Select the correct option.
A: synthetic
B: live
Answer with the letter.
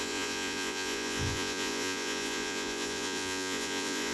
A